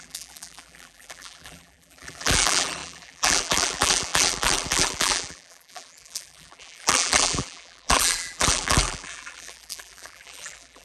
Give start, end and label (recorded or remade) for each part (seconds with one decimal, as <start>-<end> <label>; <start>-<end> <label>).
0.0-10.8 remade